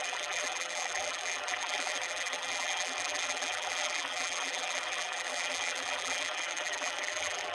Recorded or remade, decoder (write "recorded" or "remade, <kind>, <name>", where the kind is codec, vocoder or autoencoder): remade, vocoder, BigVGAN v2